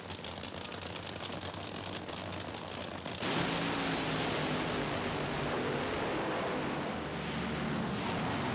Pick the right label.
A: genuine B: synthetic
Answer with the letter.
A